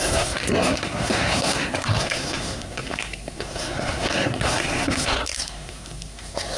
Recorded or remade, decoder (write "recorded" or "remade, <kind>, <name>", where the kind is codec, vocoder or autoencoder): remade, codec, SNAC